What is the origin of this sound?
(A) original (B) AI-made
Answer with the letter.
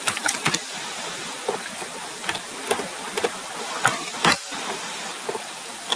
B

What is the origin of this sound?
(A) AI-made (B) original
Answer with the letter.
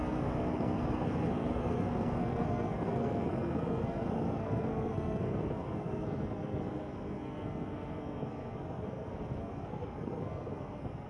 A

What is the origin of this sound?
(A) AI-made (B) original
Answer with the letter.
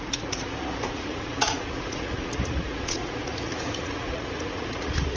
A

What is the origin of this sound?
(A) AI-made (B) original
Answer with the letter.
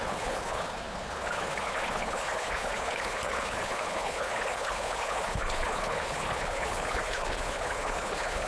A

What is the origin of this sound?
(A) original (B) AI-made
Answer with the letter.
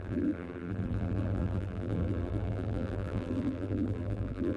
B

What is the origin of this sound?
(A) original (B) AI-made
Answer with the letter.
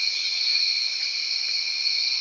A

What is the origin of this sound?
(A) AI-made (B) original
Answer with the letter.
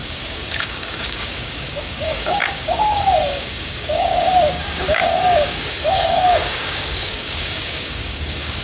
A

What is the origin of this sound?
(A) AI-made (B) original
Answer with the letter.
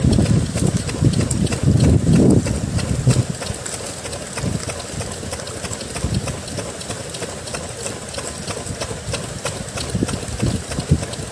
B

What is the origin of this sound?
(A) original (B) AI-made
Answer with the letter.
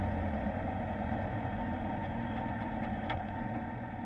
B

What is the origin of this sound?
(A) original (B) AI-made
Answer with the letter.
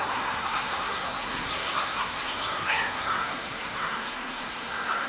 B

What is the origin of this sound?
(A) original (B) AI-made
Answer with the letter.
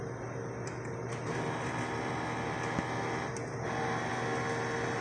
A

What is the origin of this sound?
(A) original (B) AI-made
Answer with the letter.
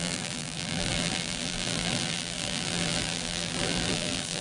B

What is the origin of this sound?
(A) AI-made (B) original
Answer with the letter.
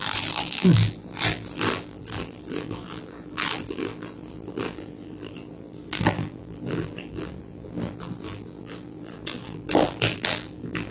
A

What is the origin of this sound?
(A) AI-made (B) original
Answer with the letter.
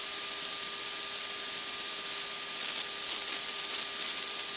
B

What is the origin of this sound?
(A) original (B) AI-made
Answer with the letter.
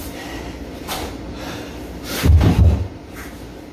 A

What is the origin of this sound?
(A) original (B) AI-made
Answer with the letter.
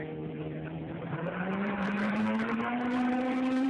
B